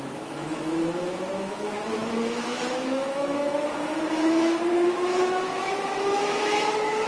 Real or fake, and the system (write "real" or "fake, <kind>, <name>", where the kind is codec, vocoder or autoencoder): fake, autoencoder, DAC-VAE